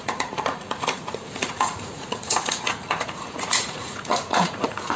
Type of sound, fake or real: fake